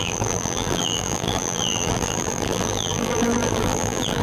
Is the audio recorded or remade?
remade